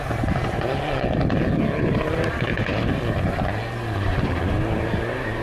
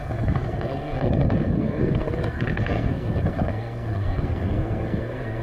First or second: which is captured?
first